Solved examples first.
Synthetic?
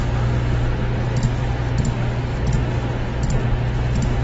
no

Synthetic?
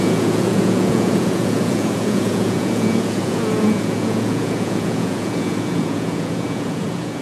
yes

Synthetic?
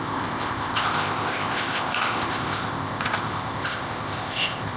yes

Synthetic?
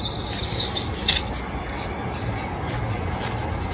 no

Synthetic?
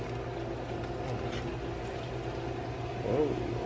no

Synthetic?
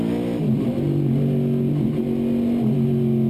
no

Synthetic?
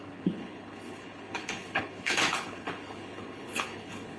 yes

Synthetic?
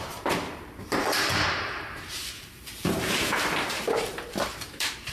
yes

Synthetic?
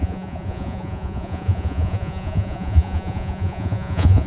yes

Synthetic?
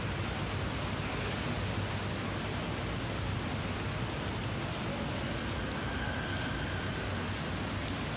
no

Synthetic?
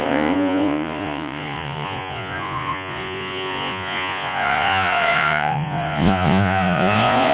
yes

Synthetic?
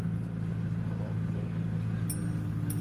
no